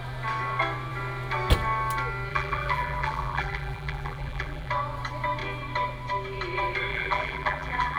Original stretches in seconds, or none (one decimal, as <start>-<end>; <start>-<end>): 0.0-2.3; 4.7-6.9